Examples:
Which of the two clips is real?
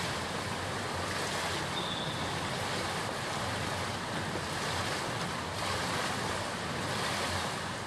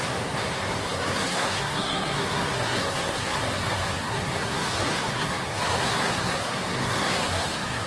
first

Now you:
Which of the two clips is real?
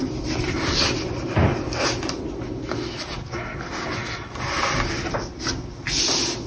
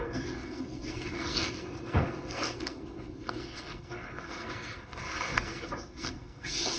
first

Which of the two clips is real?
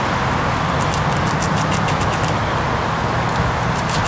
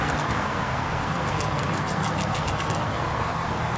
first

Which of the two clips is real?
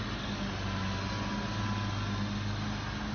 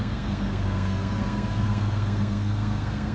first